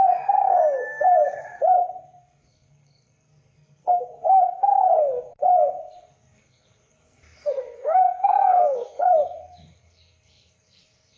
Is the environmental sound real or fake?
fake